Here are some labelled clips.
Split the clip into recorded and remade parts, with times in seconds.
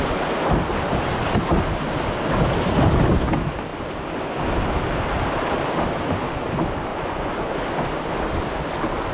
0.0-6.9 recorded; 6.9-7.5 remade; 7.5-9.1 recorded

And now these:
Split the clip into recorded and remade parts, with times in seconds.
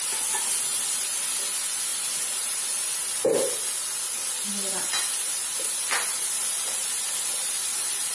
0.0-8.1 recorded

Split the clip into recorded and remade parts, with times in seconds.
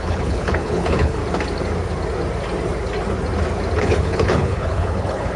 0.0-1.2 remade; 1.2-3.8 recorded; 3.8-5.4 remade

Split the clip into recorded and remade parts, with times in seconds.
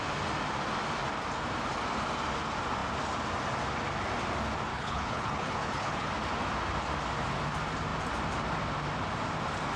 0.0-4.7 recorded; 4.7-6.1 remade; 6.1-9.8 recorded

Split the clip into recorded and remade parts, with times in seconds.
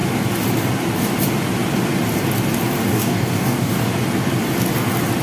0.0-2.9 recorded; 2.9-3.8 remade; 3.8-5.2 recorded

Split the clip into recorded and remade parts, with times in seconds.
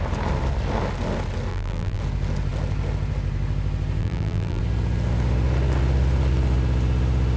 0.0-1.5 recorded; 1.5-2.0 remade; 2.0-4.0 recorded; 4.0-4.6 remade; 4.6-7.4 recorded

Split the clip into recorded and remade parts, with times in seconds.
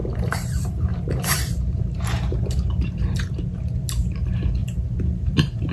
0.0-3.4 remade; 3.4-4.6 recorded; 4.6-5.7 remade